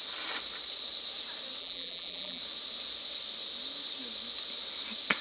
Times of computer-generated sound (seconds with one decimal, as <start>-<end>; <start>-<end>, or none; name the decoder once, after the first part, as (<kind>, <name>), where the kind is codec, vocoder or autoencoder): 1.6-2.4 (vocoder, BigVGAN v2)